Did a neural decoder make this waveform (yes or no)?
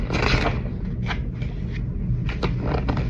no